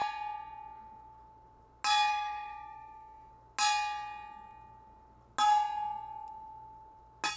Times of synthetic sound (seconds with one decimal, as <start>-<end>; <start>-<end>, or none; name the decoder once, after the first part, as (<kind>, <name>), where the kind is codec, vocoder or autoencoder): 2.1-3.3 (autoencoder, DAC-VAE)